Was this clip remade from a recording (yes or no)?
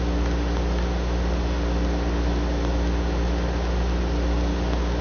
no